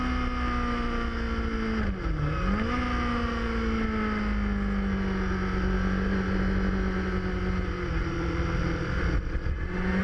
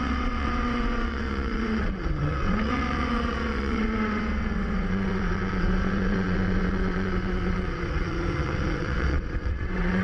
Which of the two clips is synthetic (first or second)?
second